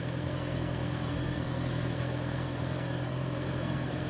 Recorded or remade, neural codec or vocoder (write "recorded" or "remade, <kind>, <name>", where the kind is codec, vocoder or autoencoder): remade, codec, SNAC